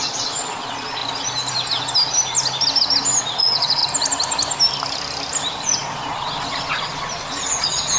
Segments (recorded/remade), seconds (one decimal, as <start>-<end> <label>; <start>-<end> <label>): 0.0-1.0 remade; 1.0-3.2 recorded; 3.2-3.8 remade; 3.8-5.6 recorded; 5.6-8.0 remade